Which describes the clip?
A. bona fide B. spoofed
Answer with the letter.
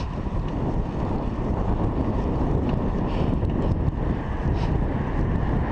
A